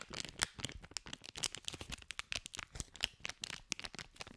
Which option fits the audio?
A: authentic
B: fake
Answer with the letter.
A